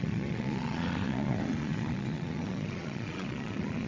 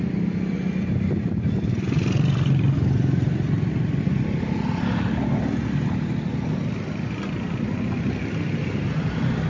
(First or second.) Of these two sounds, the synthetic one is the first